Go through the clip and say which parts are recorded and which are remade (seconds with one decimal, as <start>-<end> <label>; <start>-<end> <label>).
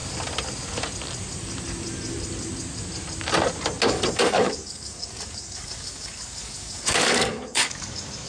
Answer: 0.0-4.2 recorded; 4.2-8.3 remade